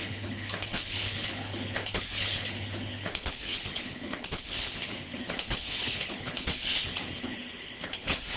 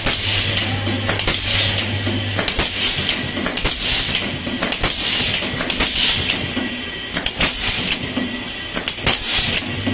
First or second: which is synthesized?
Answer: first